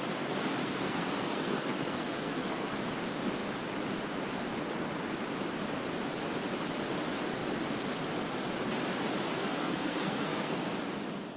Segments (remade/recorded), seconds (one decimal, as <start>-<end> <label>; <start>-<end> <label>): 0.0-0.6 recorded; 0.6-2.8 remade; 2.8-9.4 recorded; 9.4-10.7 remade; 10.7-11.4 recorded